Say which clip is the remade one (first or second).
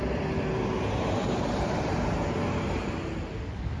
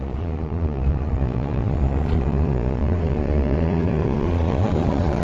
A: second